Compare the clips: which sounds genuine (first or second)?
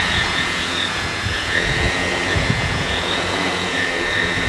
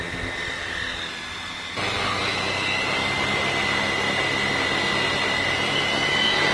second